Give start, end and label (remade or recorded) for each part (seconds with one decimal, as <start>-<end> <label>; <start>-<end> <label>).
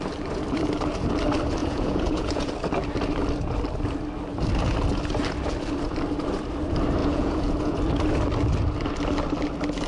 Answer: 0.0-1.6 recorded; 1.6-2.5 remade; 2.5-7.0 recorded; 7.0-7.8 remade; 7.8-9.9 recorded